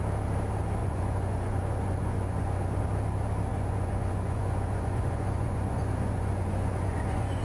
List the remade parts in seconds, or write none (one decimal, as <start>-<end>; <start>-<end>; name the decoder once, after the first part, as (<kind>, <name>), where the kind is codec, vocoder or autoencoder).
0.8-2.8 (vocoder, Vocos); 3.5-7.4